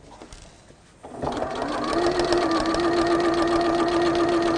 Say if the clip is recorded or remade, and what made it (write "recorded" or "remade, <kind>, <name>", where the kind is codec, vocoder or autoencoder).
recorded